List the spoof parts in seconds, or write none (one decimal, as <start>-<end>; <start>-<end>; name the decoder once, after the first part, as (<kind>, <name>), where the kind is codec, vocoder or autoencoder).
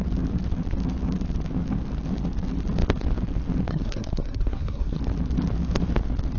3.7-5.0 (codec, SNAC)